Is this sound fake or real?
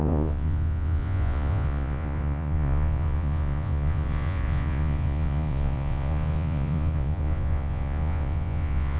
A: fake